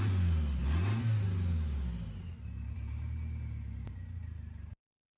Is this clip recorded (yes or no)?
yes